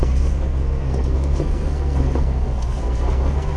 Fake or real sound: fake